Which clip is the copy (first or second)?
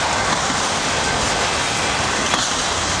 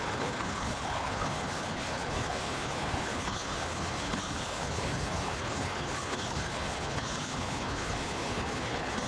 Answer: second